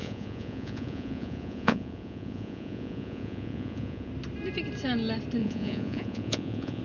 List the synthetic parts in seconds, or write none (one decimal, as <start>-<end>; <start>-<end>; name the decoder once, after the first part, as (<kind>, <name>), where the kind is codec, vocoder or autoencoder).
0.0-4.1 (vocoder, Vocos); 5.4-6.8